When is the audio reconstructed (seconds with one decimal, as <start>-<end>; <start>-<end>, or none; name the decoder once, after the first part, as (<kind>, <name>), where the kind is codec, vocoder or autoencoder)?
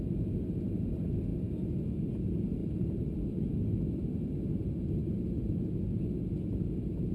2.6-4.0 (vocoder, BigVGAN v2)